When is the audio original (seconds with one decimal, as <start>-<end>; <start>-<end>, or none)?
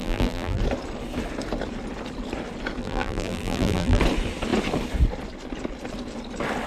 0.6-2.8; 4.0-6.7